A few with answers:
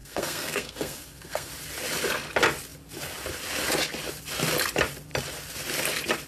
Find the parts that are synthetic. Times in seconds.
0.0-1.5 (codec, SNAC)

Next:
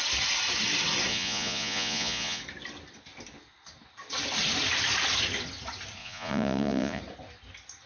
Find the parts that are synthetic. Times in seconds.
1.1-2.4 (vocoder, Vocos); 6.0-7.0

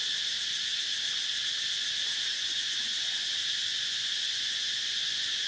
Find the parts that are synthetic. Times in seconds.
2.3-3.3 (vocoder, Vocos); 3.7-5.5

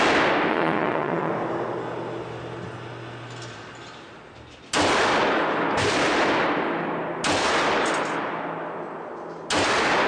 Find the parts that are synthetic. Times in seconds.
0.5-1.3 (vocoder, Vocos)

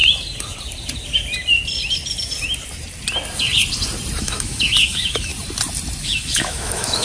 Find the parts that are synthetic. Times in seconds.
4.2-5.3 (autoencoder, DAC-VAE); 6.0-7.0

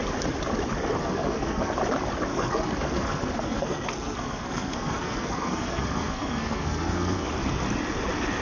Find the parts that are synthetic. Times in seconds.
1.0-1.7 (codec, SNAC); 2.3-7.3

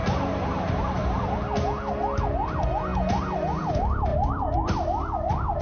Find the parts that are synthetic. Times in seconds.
4.1-5.6 (vocoder, BigVGAN v2)

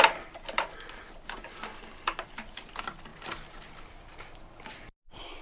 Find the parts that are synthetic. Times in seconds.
none